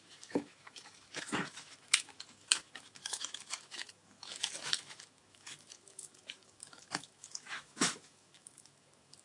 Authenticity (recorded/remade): remade